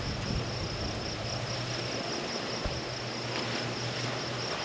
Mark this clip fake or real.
real